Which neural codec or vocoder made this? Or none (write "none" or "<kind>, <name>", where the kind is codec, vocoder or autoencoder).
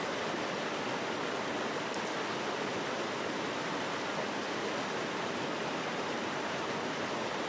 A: none